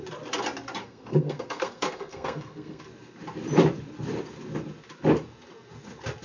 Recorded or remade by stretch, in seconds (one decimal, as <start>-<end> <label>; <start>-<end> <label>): 0.0-0.8 recorded; 0.8-2.8 remade; 2.8-6.2 recorded